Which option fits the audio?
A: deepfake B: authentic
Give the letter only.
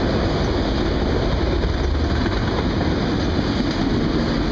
B